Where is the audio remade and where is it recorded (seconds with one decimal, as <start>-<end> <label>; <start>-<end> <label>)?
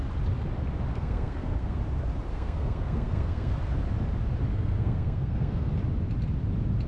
0.0-0.9 recorded; 0.9-1.8 remade; 1.8-2.3 recorded; 2.3-3.5 remade; 3.5-4.5 recorded; 4.5-5.7 remade; 5.7-6.9 recorded